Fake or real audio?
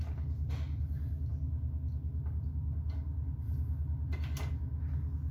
real